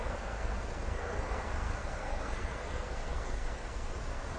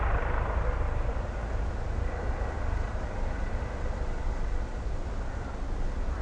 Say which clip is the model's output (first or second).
first